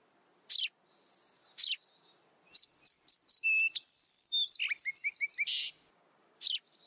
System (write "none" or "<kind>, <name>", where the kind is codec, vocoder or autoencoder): none